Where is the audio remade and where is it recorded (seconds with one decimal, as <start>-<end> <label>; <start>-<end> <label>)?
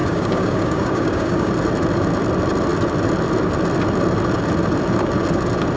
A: 0.0-1.5 remade; 1.5-5.8 recorded